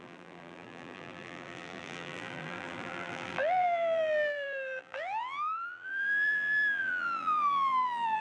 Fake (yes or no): yes